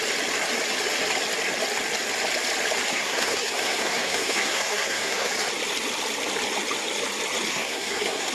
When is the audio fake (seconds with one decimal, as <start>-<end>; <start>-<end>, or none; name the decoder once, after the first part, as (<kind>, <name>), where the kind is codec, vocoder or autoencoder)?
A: 2.9-5.3 (codec, SNAC); 7.5-8.3